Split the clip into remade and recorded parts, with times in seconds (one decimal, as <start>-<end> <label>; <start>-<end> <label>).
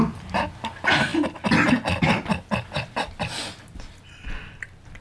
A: 0.0-5.0 recorded